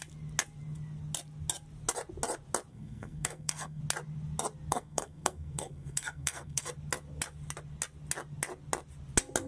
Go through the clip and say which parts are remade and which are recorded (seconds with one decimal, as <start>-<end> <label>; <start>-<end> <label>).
0.0-2.7 recorded; 2.7-3.8 remade; 3.8-4.7 recorded; 4.7-6.7 remade; 6.7-9.5 recorded